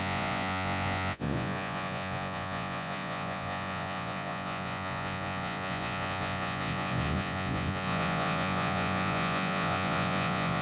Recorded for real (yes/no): no